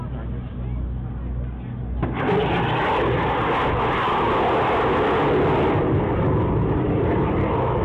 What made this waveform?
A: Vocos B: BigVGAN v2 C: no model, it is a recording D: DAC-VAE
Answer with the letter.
C